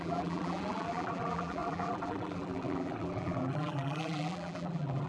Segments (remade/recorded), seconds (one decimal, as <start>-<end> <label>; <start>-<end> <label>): 0.0-5.1 remade